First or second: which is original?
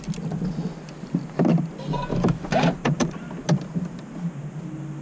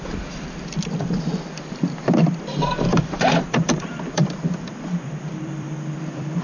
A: first